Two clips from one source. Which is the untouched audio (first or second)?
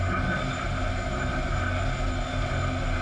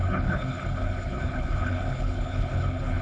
first